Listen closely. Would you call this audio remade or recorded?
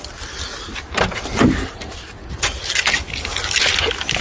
recorded